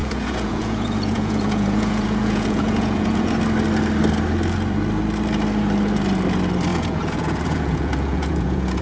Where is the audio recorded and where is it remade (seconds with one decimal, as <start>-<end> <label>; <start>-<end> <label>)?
0.0-3.3 remade; 3.3-6.7 recorded; 6.7-8.8 remade